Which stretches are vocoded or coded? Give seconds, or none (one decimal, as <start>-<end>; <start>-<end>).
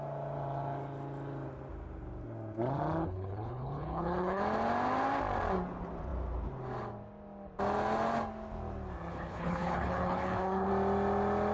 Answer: 3.0-4.4; 9.1-10.7